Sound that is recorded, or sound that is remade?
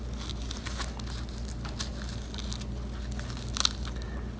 recorded